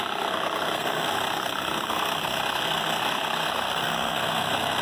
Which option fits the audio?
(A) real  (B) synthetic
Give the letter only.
B